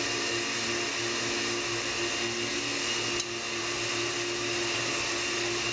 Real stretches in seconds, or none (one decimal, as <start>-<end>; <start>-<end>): 0.0-5.7